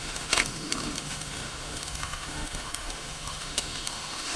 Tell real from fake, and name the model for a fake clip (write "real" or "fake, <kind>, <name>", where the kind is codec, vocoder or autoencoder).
fake, autoencoder, DAC-VAE